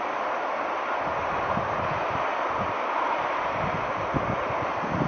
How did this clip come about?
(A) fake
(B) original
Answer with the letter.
B